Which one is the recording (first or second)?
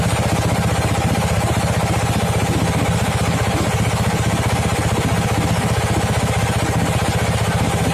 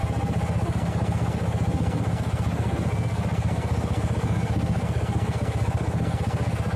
first